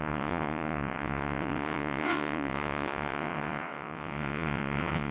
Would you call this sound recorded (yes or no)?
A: no